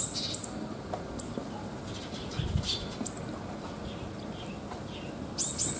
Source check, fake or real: real